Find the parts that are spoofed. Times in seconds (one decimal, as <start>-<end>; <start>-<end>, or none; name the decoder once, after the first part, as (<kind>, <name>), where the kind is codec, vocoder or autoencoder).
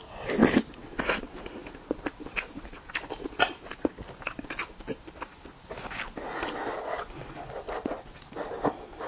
0.0-1.6 (vocoder, BigVGAN v2); 2.9-5.3